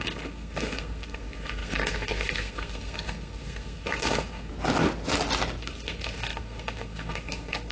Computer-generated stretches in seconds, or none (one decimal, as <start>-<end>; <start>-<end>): 0.0-4.5; 5.6-7.7